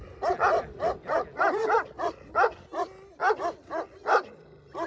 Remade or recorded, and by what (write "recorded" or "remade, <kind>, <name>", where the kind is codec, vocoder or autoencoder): recorded